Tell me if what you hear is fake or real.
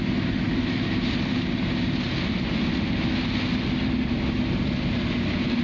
real